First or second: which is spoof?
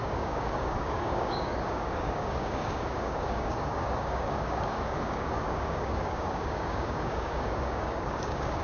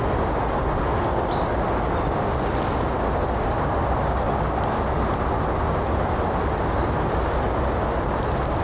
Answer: first